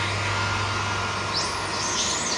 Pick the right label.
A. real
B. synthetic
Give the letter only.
A